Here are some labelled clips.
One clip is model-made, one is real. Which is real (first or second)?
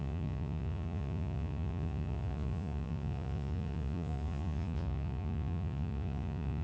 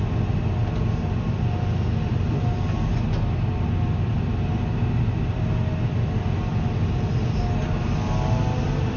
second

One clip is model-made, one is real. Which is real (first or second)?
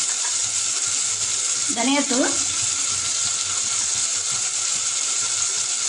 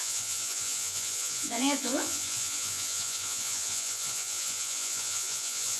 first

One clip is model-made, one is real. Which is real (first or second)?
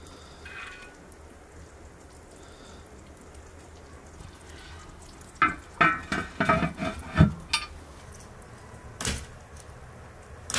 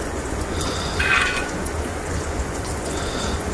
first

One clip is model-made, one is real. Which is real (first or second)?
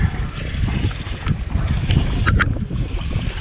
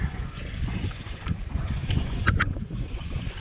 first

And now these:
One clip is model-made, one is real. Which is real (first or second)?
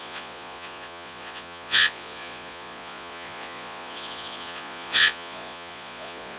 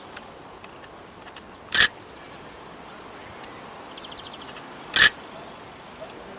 second